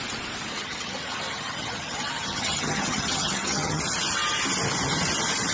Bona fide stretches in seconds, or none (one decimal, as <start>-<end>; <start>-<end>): 0.0-0.5; 3.8-5.5